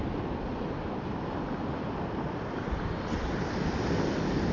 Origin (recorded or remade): remade